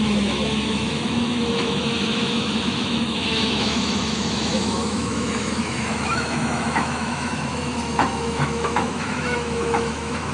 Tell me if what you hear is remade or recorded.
remade